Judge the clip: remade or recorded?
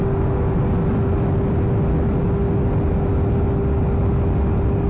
recorded